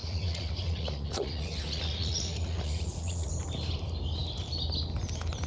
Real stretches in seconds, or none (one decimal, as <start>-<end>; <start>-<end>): 3.3-5.5